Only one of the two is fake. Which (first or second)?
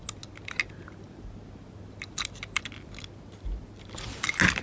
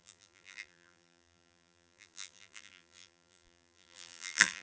second